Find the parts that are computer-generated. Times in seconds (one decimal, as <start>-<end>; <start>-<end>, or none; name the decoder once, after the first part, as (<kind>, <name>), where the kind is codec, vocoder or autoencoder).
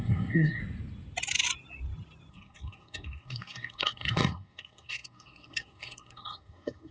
0.0-0.6 (codec, SNAC); 2.3-6.9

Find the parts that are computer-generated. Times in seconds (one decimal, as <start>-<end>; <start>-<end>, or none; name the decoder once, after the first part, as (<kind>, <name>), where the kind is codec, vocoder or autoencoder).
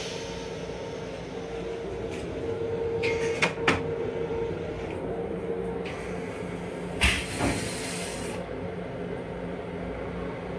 none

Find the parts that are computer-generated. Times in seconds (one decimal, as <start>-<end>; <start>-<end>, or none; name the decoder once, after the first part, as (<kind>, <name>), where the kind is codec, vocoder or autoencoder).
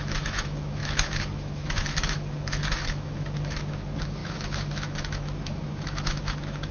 0.0-6.7 (autoencoder, DAC-VAE)